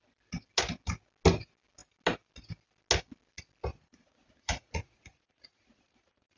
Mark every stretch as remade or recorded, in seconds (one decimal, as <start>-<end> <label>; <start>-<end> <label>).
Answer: 0.0-3.7 recorded; 3.7-6.4 remade